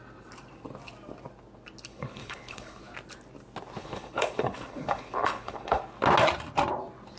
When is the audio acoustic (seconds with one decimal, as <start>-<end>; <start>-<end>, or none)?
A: 0.0-1.9; 2.8-3.8; 5.8-7.2